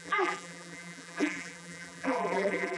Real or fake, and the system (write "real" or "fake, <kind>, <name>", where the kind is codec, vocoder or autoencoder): fake, vocoder, BigVGAN v2